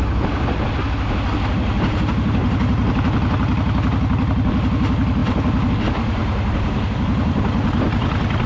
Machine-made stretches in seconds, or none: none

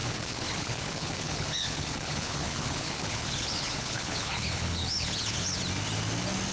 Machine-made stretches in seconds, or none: 0.0-5.6 (codec, HILCodec)

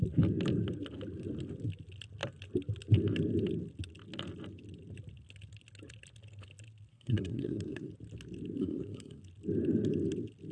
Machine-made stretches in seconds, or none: 6.9-7.9 (codec, SNAC); 8.6-9.2

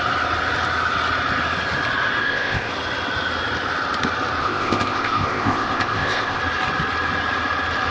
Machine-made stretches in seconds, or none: 2.2-2.7 (codec, ZipCodec); 4.4-6.4

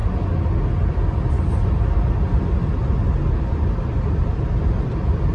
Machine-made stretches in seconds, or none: none

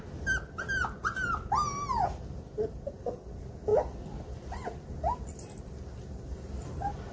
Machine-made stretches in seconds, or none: none

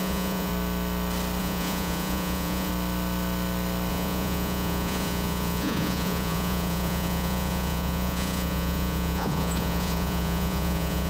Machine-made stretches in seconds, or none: 0.0-0.5 (vocoder, Vocos); 1.4-2.7; 3.9-11.1